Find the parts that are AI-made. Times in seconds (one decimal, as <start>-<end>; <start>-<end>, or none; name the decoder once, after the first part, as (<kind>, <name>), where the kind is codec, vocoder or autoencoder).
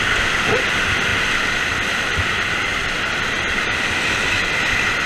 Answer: none